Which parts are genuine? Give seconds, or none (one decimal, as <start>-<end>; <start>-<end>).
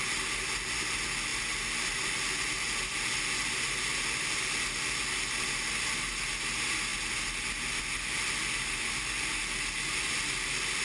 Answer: 0.0-10.8